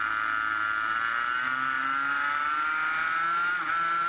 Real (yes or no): yes